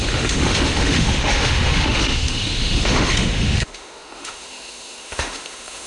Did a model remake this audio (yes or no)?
yes